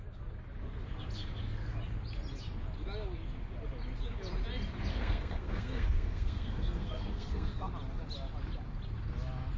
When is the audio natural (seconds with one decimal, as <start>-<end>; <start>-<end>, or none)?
0.0-4.9; 7.7-9.6